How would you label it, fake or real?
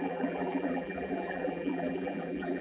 fake